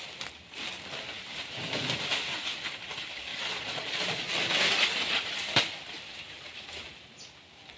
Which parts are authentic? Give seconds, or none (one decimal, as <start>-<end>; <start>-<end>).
0.0-3.3; 4.3-7.8